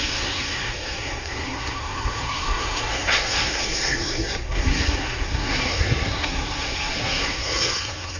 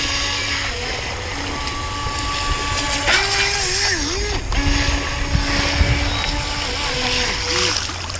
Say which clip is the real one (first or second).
second